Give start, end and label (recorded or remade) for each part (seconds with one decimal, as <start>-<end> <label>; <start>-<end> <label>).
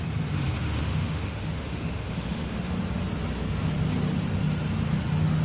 0.0-0.6 recorded; 0.6-2.8 remade; 2.8-5.4 recorded